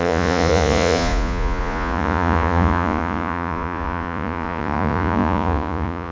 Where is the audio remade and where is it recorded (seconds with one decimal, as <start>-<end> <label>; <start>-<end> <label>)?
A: 0.0-6.1 remade